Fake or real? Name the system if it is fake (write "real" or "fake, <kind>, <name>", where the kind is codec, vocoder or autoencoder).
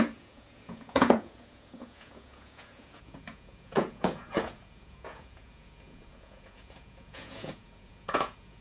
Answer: fake, vocoder, Vocos